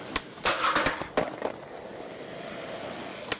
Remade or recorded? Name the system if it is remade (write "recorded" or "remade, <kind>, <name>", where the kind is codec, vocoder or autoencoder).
recorded